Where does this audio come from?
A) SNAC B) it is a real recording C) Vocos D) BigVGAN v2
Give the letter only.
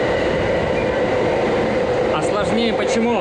B